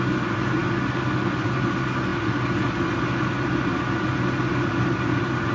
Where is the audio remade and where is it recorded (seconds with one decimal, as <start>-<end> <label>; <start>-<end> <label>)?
0.0-5.5 recorded